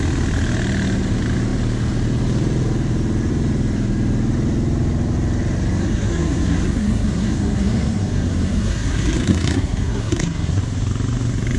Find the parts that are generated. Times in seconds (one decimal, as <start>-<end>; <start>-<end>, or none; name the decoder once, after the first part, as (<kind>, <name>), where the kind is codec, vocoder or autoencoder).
5.8-10.6 (codec, SNAC)